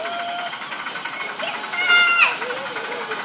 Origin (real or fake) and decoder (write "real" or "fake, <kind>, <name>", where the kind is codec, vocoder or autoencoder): real